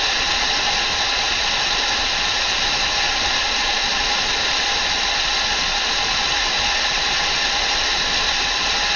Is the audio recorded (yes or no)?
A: yes